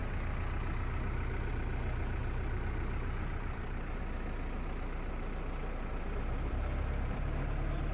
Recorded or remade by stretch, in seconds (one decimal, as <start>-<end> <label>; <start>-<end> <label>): 0.0-2.2 recorded; 2.2-4.0 remade; 4.0-5.9 recorded; 5.9-7.3 remade; 7.3-7.9 recorded